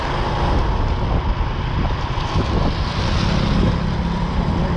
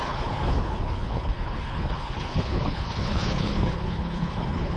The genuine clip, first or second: first